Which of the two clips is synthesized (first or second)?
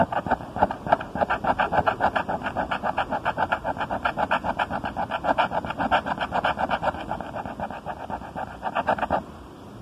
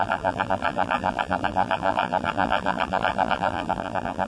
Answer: second